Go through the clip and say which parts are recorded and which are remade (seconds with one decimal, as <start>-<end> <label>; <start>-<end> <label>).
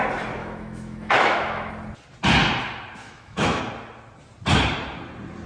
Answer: 0.0-0.4 recorded; 0.4-1.7 remade; 1.7-3.0 recorded; 3.0-3.6 remade; 3.6-5.5 recorded